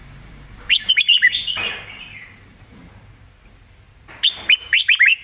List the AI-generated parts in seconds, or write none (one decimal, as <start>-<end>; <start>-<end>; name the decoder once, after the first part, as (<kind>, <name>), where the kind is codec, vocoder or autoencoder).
0.0-2.8 (vocoder, BigVGAN v2); 4.6-5.2